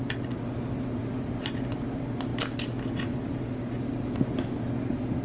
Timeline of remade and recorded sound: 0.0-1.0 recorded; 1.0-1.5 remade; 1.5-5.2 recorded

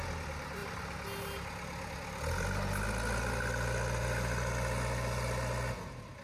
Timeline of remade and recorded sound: 0.0-6.2 recorded

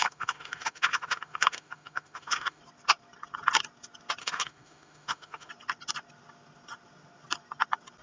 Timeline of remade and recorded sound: 0.0-2.6 remade; 2.6-4.2 recorded; 4.2-5.5 remade; 5.5-8.0 recorded

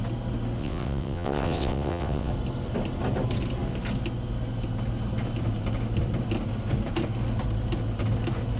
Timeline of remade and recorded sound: 0.0-0.6 recorded; 0.6-2.3 remade; 2.3-8.6 recorded

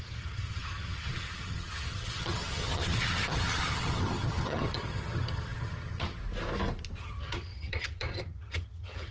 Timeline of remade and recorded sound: 0.0-6.2 remade; 6.2-7.0 recorded; 7.0-9.1 remade

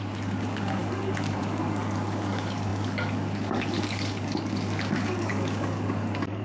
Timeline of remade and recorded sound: 0.0-6.4 remade